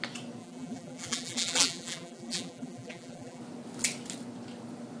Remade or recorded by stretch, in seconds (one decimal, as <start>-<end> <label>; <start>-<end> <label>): 0.0-0.4 recorded; 0.4-3.4 remade; 3.4-5.0 recorded